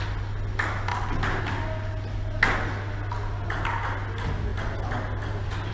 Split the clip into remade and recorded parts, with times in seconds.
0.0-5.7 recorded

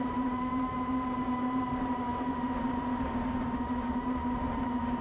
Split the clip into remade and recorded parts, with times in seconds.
0.0-5.0 remade